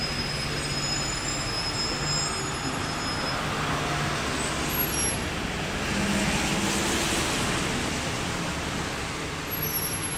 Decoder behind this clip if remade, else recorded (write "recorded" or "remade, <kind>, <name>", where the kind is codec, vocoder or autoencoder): recorded